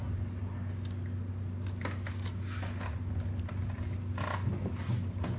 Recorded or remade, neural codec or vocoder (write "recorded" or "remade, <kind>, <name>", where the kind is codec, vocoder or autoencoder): recorded